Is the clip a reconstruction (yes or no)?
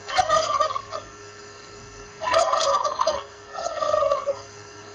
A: yes